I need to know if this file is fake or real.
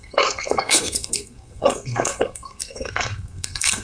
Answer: fake